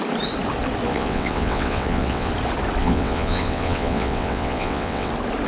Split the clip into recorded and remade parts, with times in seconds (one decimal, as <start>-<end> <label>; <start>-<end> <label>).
0.0-0.9 recorded; 0.9-2.3 remade; 2.3-2.8 recorded; 2.8-5.1 remade; 5.1-5.5 recorded